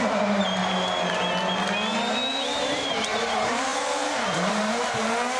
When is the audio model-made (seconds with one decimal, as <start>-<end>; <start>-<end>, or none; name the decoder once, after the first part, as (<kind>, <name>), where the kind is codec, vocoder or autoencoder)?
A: 0.0-0.6 (vocoder, BigVGAN v2); 2.3-5.4